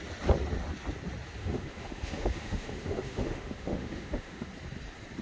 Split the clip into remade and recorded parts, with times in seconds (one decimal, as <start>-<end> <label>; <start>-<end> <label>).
0.0-1.4 recorded; 1.4-4.5 remade; 4.5-5.2 recorded